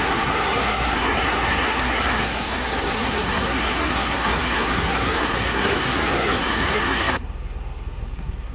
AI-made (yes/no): yes